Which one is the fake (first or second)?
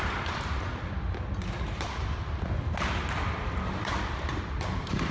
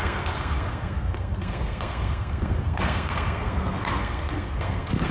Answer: second